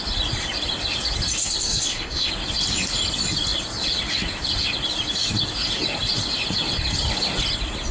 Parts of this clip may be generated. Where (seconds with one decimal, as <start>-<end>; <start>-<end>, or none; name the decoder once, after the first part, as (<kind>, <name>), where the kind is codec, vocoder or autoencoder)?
1.4-2.3 (codec, SNAC)